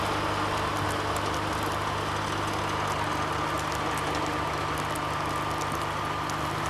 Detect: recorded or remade recorded